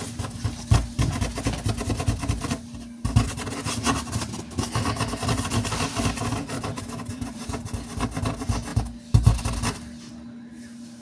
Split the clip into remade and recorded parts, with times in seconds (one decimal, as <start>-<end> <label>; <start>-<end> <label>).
0.0-11.0 recorded